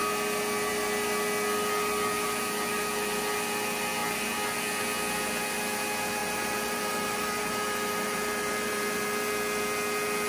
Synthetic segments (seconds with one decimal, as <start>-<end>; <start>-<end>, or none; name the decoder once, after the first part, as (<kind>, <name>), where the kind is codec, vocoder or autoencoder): 6.2-9.3 (vocoder, BigVGAN v2)